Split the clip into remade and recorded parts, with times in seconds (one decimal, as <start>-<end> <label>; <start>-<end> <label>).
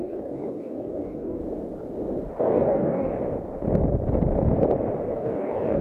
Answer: 0.0-1.4 remade; 1.4-2.4 recorded; 2.4-3.1 remade; 3.1-5.1 recorded; 5.1-5.8 remade